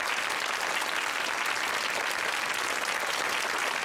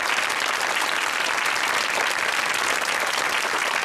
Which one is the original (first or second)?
first